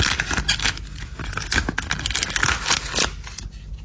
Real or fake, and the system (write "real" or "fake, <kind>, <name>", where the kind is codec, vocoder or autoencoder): real